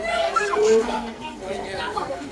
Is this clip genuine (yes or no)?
no